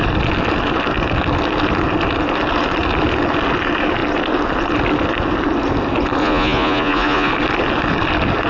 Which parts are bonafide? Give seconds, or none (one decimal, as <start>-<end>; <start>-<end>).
0.0-6.2; 7.3-8.5